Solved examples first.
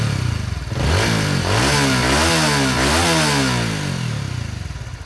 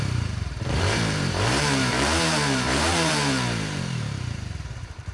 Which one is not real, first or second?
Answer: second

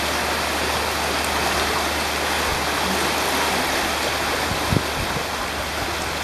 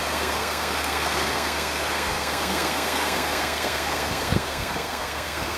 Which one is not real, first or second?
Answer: second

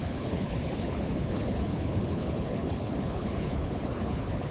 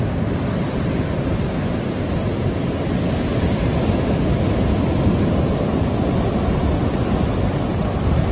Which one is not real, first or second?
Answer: first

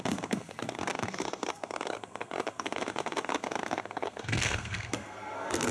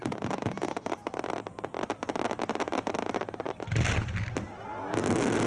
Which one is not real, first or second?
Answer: first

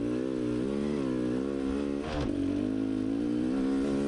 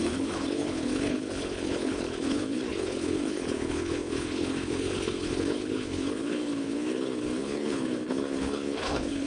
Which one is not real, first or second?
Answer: second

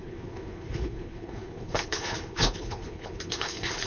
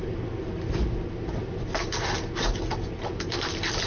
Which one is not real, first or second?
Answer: first